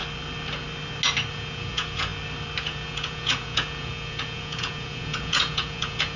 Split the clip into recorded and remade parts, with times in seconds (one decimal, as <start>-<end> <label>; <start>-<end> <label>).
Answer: 0.0-1.3 recorded; 1.3-2.1 remade; 2.1-2.6 recorded; 2.6-6.2 remade